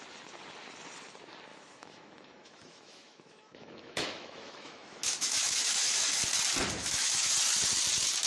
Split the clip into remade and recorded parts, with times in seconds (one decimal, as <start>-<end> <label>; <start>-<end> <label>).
0.0-1.5 recorded; 1.5-6.2 remade; 6.2-6.8 recorded; 6.8-7.3 remade; 7.3-8.3 recorded